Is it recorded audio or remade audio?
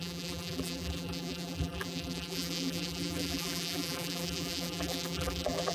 remade